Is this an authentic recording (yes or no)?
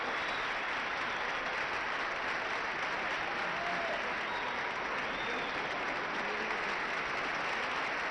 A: yes